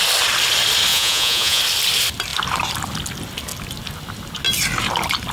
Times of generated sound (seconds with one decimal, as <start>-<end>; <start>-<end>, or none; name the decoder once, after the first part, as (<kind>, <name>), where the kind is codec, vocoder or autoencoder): 0.9-1.6 (vocoder, Vocos)